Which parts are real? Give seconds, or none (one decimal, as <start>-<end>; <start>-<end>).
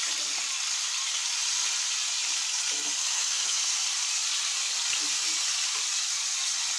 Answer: 0.0-3.0; 3.6-6.8